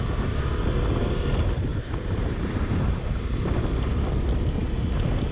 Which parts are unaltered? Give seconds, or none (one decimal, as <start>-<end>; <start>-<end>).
0.0-1.7; 3.7-5.3